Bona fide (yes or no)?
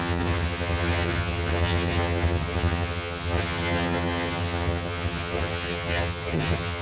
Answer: no